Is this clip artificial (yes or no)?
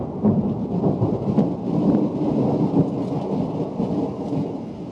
no